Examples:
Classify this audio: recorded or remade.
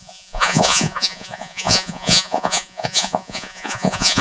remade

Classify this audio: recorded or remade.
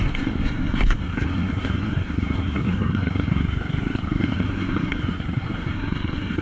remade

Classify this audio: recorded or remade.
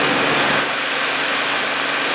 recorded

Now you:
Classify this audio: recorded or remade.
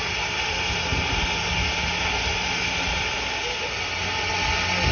recorded